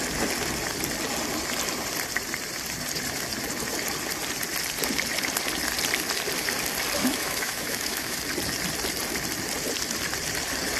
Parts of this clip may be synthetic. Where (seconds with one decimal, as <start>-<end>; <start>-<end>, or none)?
7.0-8.2